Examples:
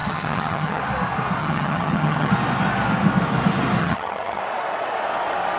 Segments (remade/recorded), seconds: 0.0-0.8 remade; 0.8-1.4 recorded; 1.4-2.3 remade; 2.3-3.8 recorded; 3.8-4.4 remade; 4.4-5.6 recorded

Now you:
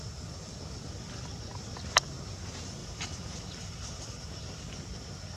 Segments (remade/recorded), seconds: 0.0-2.8 recorded; 2.8-4.8 remade; 4.8-5.4 recorded

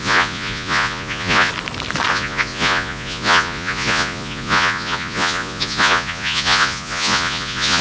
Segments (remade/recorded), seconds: 0.0-1.5 remade; 1.5-2.1 recorded; 2.1-7.8 remade

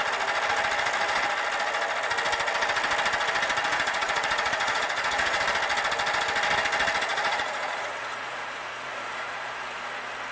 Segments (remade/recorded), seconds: 0.0-3.7 recorded; 3.7-5.4 remade; 5.4-7.1 recorded; 7.1-9.5 remade; 9.5-10.3 recorded

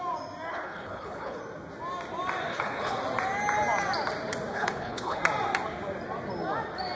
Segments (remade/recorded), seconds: 0.0-0.5 recorded; 0.5-1.4 remade; 1.4-2.5 recorded; 2.5-3.0 remade; 3.0-4.5 recorded; 4.5-5.2 remade; 5.2-7.0 recorded

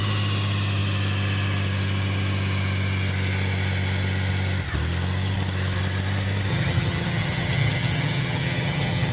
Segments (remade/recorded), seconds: 0.0-6.5 recorded; 6.5-9.1 remade

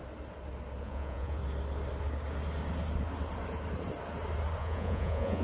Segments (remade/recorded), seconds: 0.0-0.8 recorded; 0.8-1.4 remade; 1.4-4.6 recorded; 4.6-5.4 remade

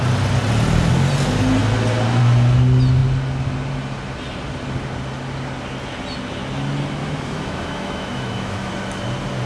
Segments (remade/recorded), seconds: 0.0-7.0 recorded; 7.0-8.7 remade; 8.7-9.5 recorded